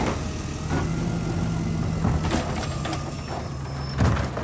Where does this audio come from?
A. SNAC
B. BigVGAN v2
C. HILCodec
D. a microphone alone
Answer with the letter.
D